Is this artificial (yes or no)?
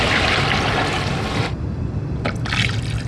no